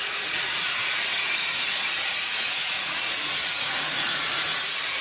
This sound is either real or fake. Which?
fake